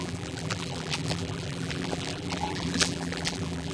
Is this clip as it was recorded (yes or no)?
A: no